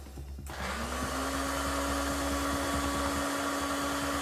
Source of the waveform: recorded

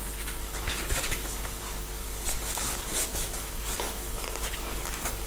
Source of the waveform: remade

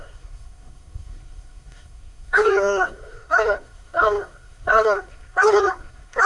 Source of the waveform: remade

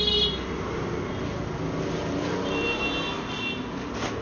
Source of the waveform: recorded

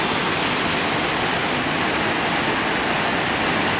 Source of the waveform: recorded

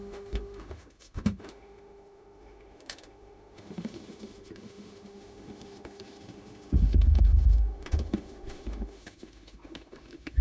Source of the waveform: remade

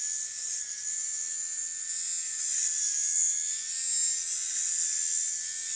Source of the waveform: recorded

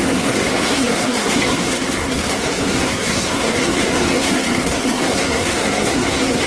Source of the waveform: remade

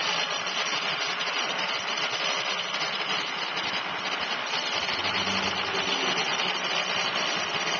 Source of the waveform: recorded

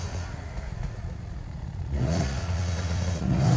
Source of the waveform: remade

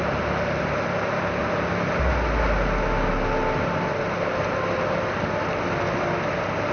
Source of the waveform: recorded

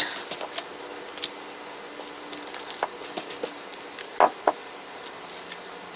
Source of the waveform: recorded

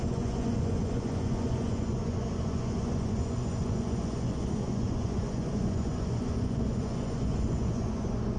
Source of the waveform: remade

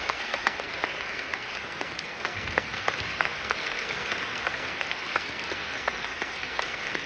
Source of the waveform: remade